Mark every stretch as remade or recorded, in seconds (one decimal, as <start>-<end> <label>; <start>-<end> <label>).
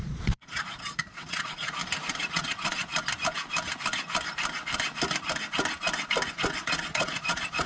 0.0-1.8 remade; 1.8-2.3 recorded; 2.3-2.9 remade; 2.9-6.3 recorded; 6.3-7.7 remade